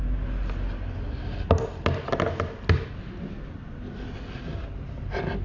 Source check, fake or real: real